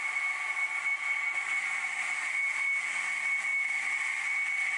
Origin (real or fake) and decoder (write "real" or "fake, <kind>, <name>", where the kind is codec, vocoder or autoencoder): real